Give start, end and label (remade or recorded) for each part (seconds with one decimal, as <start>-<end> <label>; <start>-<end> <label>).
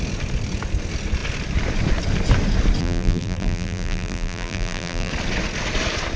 0.0-2.8 recorded; 2.8-5.1 remade; 5.1-6.2 recorded